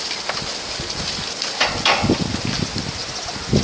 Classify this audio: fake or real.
real